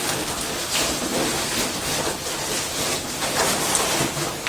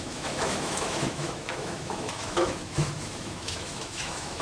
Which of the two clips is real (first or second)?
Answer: first